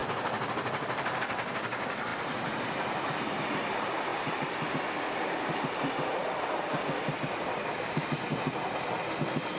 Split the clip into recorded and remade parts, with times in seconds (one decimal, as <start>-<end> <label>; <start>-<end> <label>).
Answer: 0.0-1.2 remade; 1.2-2.1 recorded; 2.1-3.6 remade; 3.6-4.1 recorded; 4.1-4.7 remade; 4.7-6.2 recorded; 6.2-7.6 remade; 7.6-9.6 recorded